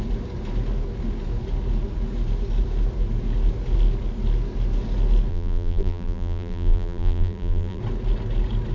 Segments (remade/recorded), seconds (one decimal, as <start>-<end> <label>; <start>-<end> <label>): 0.0-5.3 recorded; 5.3-7.8 remade; 7.8-8.7 recorded